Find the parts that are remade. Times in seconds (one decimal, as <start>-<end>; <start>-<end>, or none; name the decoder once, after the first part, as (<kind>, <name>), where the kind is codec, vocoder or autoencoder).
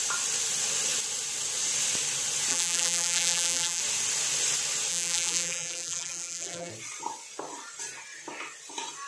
2.5-3.8 (vocoder, BigVGAN v2); 4.9-6.7